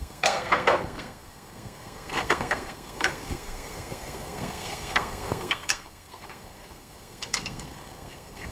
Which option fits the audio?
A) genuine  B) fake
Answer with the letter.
B